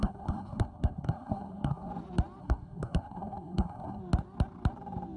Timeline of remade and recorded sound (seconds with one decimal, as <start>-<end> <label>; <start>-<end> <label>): 0.0-1.9 remade; 1.9-2.4 recorded; 2.4-4.0 remade; 4.0-5.2 recorded